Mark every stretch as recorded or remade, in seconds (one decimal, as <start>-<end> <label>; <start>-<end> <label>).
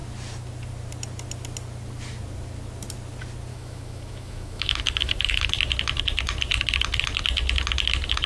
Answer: 0.0-3.5 recorded; 3.5-5.5 remade; 5.5-8.3 recorded